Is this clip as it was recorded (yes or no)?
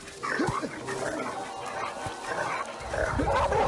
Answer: yes